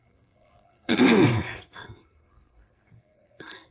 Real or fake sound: fake